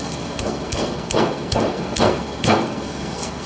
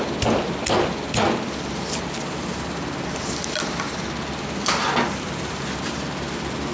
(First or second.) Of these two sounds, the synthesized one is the first